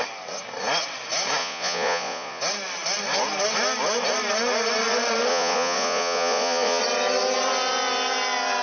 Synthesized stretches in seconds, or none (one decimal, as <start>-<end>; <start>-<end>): 1.4-2.4; 5.3-6.8